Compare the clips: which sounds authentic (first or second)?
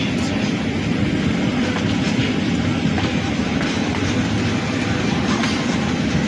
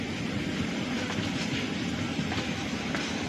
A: first